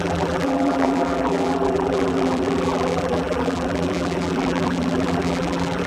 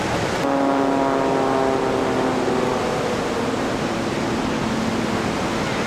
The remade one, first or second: first